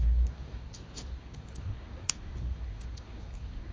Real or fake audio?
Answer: fake